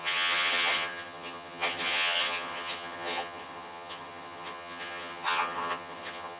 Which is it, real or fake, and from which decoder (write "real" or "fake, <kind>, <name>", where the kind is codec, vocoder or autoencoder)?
fake, vocoder, HiFi-GAN